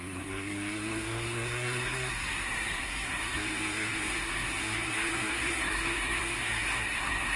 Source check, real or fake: fake